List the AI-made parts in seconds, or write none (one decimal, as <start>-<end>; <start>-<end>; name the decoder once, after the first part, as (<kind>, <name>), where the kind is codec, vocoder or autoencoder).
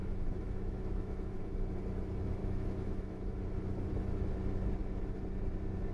0.0-1.4 (autoencoder, DAC-VAE); 2.4-3.4